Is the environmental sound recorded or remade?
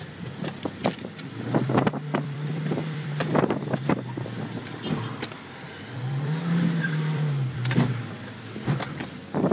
remade